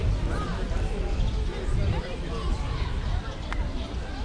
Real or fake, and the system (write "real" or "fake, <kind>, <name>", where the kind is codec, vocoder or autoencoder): real